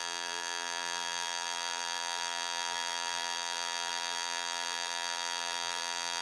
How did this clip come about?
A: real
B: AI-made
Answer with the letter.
B